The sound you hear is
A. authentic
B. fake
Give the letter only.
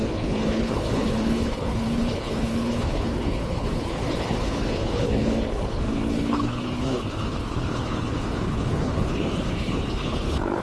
B